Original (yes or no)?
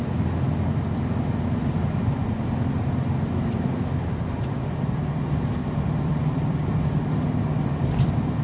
yes